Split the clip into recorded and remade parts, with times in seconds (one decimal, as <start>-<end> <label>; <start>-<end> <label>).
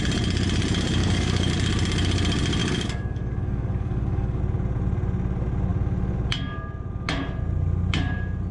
0.0-1.0 recorded; 1.0-1.5 remade; 1.5-2.6 recorded; 2.6-4.4 remade; 4.4-8.5 recorded